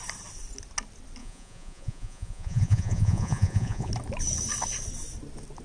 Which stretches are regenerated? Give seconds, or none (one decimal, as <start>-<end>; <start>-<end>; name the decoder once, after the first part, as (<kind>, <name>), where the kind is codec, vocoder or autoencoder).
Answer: 1.2-3.9 (vocoder, Vocos)